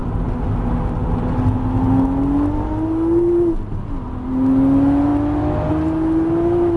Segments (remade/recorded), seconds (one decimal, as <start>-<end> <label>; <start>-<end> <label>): 0.0-6.8 recorded